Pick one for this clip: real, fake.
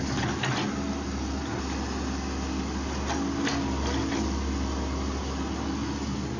real